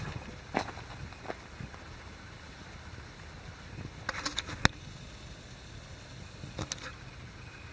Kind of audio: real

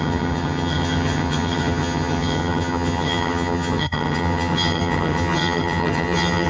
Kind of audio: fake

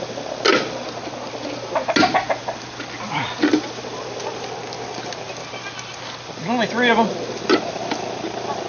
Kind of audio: real